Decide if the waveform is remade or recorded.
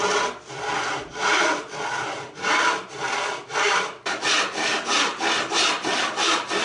recorded